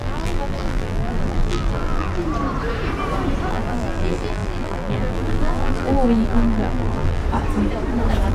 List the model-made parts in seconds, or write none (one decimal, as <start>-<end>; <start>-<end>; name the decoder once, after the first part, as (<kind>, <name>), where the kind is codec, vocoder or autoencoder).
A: 0.0-2.2 (vocoder, BigVGAN v2); 3.5-7.2